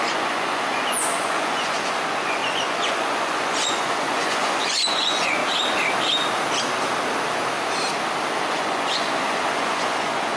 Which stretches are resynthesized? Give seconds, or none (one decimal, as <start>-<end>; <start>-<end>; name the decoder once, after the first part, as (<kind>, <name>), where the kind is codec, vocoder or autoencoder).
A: 0.0-5.4 (vocoder, Vocos); 8.5-10.4